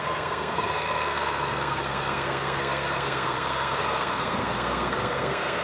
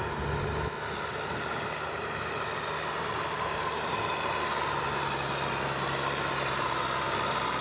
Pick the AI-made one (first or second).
first